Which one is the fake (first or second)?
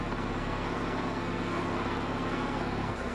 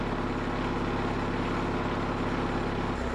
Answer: first